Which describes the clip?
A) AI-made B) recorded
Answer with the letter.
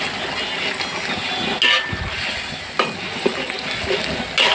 B